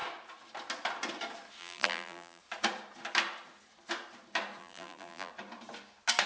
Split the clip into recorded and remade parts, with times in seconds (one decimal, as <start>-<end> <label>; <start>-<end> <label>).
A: 0.0-1.6 recorded; 1.6-2.4 remade; 2.4-4.6 recorded; 4.6-5.3 remade; 5.3-6.3 recorded